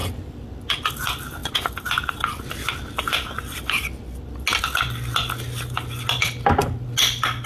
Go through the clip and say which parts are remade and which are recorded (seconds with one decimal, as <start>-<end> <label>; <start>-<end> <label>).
0.0-7.5 recorded